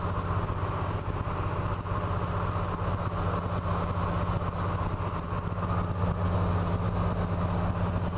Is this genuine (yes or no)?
yes